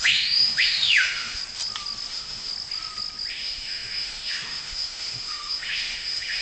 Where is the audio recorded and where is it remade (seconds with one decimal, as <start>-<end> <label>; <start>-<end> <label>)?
0.0-1.4 remade; 1.4-2.1 recorded; 2.1-2.5 remade; 2.5-3.3 recorded; 3.3-6.4 remade